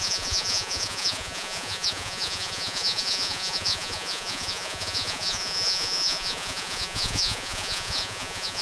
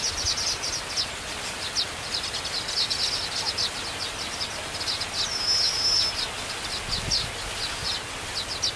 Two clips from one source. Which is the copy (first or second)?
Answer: first